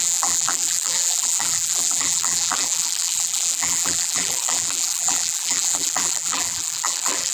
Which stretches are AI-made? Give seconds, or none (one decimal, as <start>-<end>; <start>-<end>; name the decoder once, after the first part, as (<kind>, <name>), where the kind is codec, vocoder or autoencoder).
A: 0.0-7.3 (vocoder, BigVGAN v2)